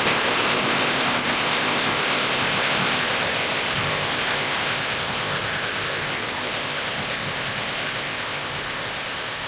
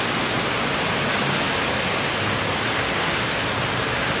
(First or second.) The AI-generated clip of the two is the first